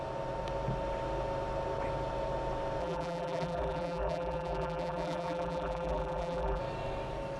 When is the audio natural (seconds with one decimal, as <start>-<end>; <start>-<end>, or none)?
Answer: 0.0-2.8; 6.6-7.4